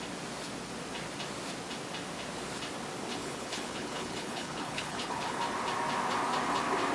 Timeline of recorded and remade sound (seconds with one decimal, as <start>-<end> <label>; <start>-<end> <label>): 0.0-3.2 recorded; 3.2-5.4 remade; 5.4-6.9 recorded